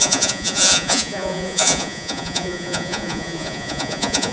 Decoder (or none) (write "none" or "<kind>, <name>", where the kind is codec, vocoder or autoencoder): vocoder, Vocos